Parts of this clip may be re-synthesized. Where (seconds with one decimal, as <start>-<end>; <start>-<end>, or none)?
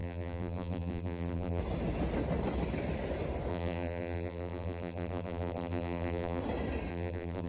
0.0-1.6; 3.5-6.4; 6.9-7.5